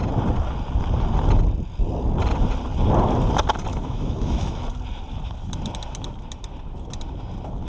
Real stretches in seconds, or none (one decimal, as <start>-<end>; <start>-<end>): 0.0-3.7; 4.6-7.7